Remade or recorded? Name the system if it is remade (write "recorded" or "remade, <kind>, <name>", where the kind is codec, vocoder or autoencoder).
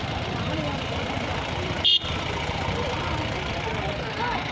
remade, vocoder, BigVGAN v2